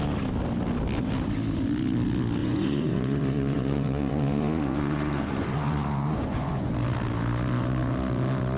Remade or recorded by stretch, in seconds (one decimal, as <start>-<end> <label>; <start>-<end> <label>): 0.0-2.4 recorded; 2.4-6.7 remade; 6.7-8.6 recorded